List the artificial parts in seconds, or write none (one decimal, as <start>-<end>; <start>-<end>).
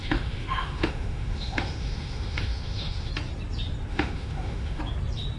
0.0-3.1; 3.9-4.8